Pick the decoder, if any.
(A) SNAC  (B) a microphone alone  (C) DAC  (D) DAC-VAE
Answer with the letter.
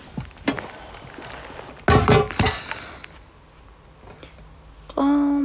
B